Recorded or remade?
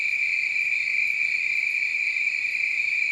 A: recorded